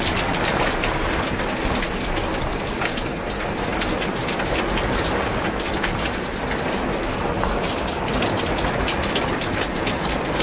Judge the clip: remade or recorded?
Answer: recorded